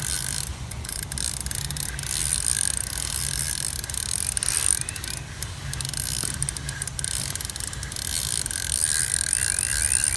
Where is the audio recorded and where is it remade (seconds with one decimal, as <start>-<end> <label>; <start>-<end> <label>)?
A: 0.0-0.5 recorded; 0.5-1.0 remade; 1.0-10.2 recorded